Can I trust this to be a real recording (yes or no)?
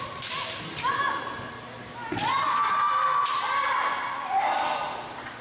yes